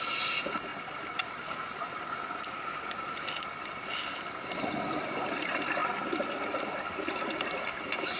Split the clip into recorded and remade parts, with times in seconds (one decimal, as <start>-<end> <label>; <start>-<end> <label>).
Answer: 0.0-8.2 recorded